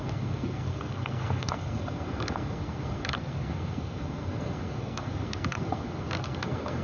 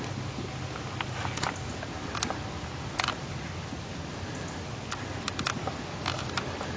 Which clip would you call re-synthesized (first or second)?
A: first